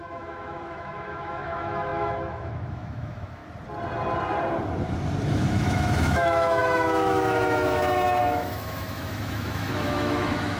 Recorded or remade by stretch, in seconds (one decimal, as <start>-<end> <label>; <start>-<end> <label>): 0.0-3.4 remade; 3.4-5.3 recorded; 5.3-10.6 remade